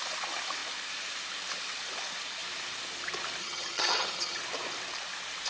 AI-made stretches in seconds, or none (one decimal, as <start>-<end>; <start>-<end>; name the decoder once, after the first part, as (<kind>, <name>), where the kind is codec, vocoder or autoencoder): 3.4-4.4 (vocoder, HiFi-GAN)